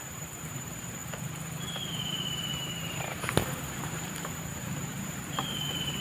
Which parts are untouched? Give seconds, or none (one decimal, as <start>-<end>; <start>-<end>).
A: 1.0-1.9